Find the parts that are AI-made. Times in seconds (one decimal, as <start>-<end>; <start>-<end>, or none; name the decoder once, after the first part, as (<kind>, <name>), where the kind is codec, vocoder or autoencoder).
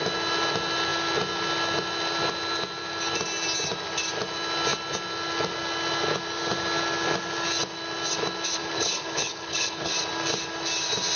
8.6-9.9 (codec, HILCodec)